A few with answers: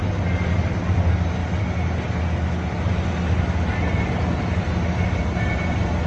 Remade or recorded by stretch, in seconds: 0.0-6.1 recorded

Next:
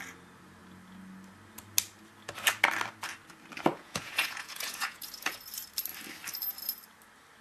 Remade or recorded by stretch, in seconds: 0.0-3.7 recorded; 3.7-5.4 remade; 5.4-7.4 recorded

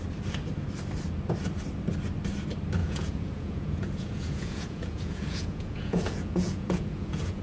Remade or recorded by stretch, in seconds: 0.0-2.8 recorded; 2.8-7.4 remade

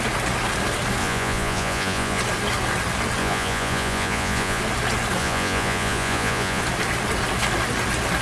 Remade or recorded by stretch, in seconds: 0.0-1.0 recorded; 1.0-2.2 remade; 2.2-3.2 recorded; 3.2-4.6 remade; 4.6-5.2 recorded; 5.2-6.6 remade; 6.6-8.2 recorded